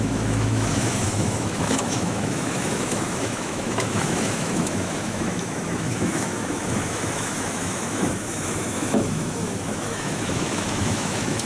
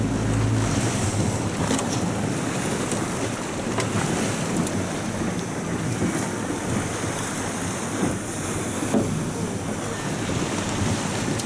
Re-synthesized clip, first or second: first